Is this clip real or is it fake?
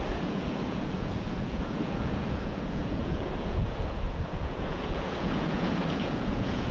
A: fake